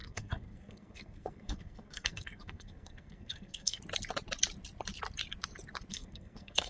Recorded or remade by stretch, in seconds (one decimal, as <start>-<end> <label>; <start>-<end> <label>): 0.0-3.8 remade; 3.8-5.9 recorded; 5.9-6.7 remade

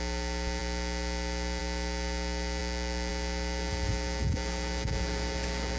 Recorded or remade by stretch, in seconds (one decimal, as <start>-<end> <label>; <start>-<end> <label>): 0.0-5.8 recorded

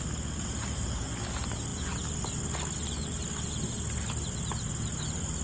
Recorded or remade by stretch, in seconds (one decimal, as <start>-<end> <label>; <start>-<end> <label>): 0.0-5.4 recorded